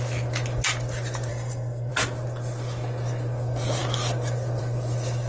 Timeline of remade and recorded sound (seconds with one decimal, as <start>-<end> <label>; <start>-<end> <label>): 0.0-1.3 recorded; 1.3-1.9 remade; 1.9-5.3 recorded